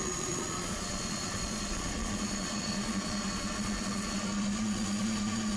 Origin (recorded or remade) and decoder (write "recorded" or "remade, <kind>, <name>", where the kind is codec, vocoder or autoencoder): remade, vocoder, Vocos